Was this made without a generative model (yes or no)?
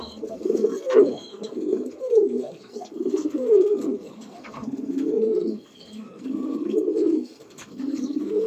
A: no